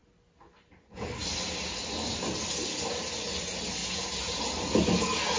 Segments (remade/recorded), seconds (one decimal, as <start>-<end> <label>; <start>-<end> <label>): 0.0-3.8 recorded; 3.8-4.4 remade; 4.4-5.4 recorded